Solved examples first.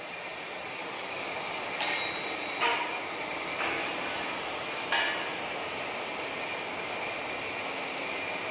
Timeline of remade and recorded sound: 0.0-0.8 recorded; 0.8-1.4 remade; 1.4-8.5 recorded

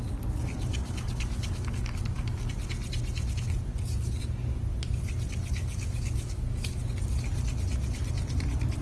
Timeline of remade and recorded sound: 0.0-0.7 recorded; 0.7-2.5 remade; 2.5-5.6 recorded; 5.6-6.7 remade; 6.7-8.8 recorded

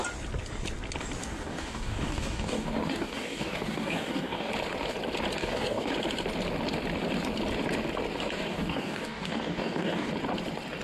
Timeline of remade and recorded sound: 0.0-1.2 recorded; 1.2-4.5 remade; 4.5-5.4 recorded; 5.4-5.9 remade; 5.9-8.5 recorded; 8.5-10.1 remade; 10.1-10.8 recorded

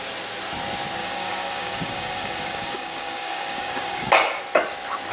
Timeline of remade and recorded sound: 0.0-1.0 recorded; 1.0-4.1 remade; 4.1-5.1 recorded

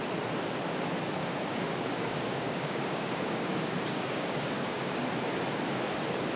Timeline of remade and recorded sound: 0.0-1.2 recorded; 1.2-5.0 remade; 5.0-6.4 recorded

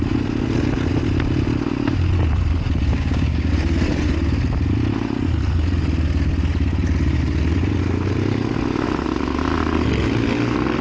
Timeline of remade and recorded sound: 0.0-2.9 recorded; 2.9-3.5 remade; 3.5-10.8 recorded

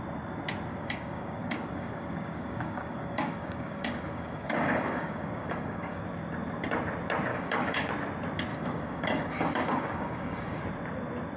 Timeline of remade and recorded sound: 0.0-0.7 recorded; 0.7-6.0 remade; 6.0-7.3 recorded; 7.3-7.9 remade; 7.9-8.5 recorded; 8.5-10.6 remade; 10.6-11.4 recorded